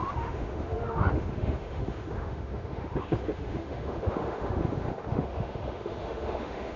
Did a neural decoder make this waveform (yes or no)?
yes